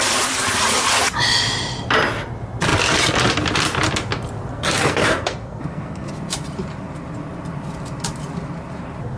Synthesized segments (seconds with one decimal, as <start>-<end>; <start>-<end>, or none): 4.5-6.1